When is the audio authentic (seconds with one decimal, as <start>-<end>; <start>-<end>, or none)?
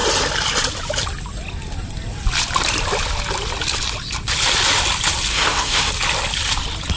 0.0-5.3; 5.9-7.0